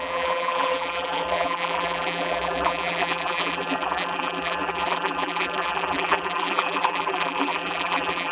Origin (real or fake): fake